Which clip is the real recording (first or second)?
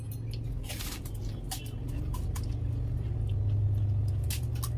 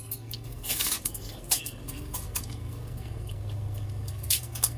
first